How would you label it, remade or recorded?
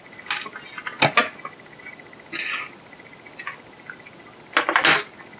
recorded